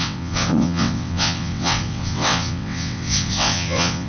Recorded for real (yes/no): no